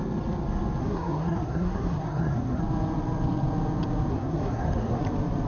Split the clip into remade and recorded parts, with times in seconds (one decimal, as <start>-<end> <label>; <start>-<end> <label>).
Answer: 0.0-0.8 recorded; 0.8-2.6 remade; 2.6-4.1 recorded; 4.1-5.0 remade; 5.0-5.5 recorded